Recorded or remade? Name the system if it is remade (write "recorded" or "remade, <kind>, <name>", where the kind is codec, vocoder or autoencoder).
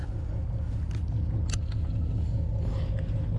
recorded